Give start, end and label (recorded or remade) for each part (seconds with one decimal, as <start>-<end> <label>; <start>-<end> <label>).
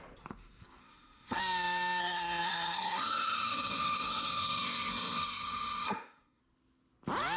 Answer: 0.0-0.8 recorded; 0.8-1.4 remade; 1.4-2.0 recorded; 2.0-6.4 remade; 6.4-7.4 recorded